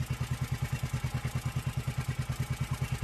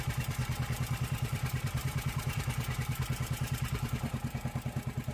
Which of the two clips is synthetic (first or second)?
second